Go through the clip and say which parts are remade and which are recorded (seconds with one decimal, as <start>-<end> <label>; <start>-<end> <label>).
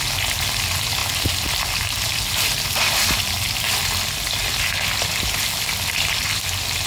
0.0-6.9 recorded